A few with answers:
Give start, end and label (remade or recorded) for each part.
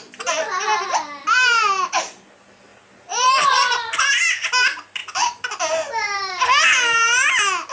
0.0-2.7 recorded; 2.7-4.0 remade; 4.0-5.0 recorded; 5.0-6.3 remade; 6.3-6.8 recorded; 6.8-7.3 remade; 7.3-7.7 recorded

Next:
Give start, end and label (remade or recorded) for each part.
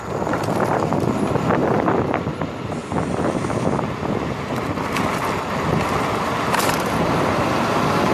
0.0-1.6 recorded; 1.6-2.2 remade; 2.2-8.1 recorded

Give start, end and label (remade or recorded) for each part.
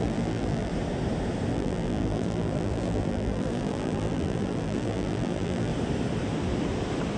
0.0-0.7 remade; 0.7-1.5 recorded; 1.5-5.7 remade; 5.7-7.2 recorded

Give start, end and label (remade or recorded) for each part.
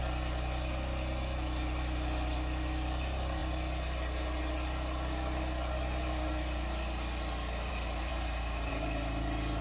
0.0-8.1 recorded; 8.1-8.7 remade; 8.7-9.6 recorded